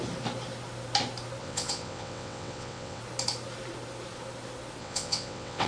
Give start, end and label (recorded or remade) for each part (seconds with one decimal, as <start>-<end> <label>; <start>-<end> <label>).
0.0-1.4 recorded; 1.4-3.0 remade; 3.0-4.8 recorded; 4.8-5.7 remade